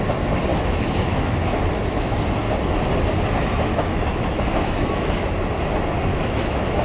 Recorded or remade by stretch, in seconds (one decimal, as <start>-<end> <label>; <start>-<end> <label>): 0.0-0.5 recorded; 0.5-1.6 remade; 1.6-3.7 recorded; 3.7-5.3 remade; 5.3-6.1 recorded; 6.1-6.8 remade